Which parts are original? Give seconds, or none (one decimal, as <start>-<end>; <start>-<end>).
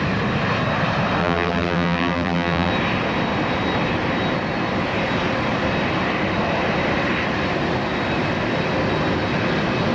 0.0-1.2; 2.7-9.9